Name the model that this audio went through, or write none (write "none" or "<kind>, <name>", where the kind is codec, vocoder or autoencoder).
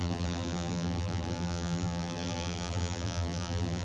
vocoder, BigVGAN v2